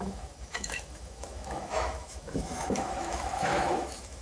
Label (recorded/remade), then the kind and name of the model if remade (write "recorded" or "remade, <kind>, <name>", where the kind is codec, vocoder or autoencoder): remade, autoencoder, DAC-VAE